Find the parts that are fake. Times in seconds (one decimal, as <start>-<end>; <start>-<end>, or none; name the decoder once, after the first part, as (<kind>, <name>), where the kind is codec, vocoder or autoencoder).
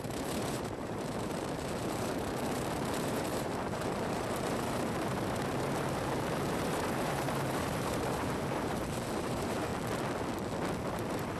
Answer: 0.0-9.7 (vocoder, BigVGAN v2); 10.9-11.4